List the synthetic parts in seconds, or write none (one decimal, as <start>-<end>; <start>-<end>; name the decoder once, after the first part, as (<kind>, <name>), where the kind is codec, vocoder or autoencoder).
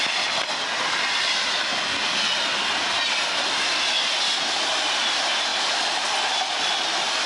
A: none